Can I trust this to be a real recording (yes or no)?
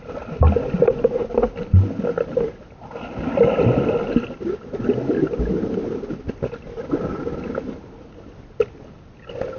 yes